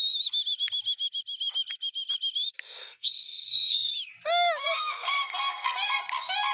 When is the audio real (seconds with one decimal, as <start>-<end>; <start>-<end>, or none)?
0.0-2.8; 3.9-4.6; 6.0-6.5